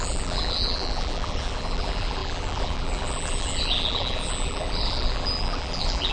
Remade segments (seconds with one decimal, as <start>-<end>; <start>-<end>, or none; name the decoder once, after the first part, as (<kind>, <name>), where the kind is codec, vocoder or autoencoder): 0.0-6.1 (vocoder, BigVGAN v2)